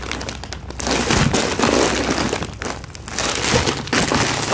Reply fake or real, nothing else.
real